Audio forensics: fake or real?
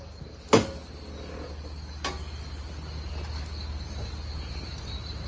real